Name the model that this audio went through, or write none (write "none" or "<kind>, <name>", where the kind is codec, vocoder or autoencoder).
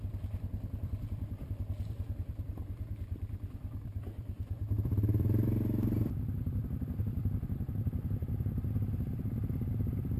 vocoder, BigVGAN v2